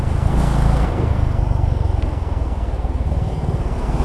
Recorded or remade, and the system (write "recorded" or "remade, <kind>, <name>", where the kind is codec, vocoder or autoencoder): remade, codec, SNAC